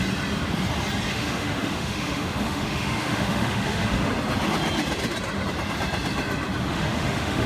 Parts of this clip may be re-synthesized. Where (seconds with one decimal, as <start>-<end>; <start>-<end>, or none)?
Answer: 1.1-4.1; 6.7-7.5